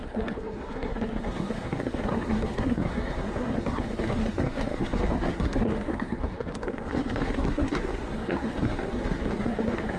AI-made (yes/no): yes